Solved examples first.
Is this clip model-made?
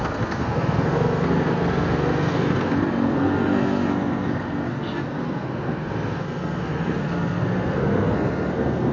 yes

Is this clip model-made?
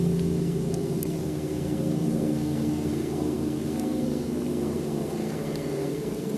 yes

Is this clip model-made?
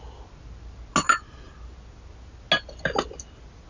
no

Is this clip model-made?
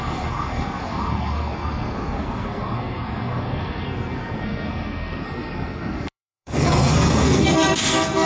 yes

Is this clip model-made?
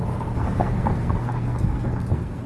yes